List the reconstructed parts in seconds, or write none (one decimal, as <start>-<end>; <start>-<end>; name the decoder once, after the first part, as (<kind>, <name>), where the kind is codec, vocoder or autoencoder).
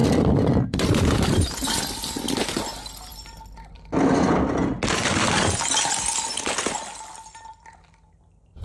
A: none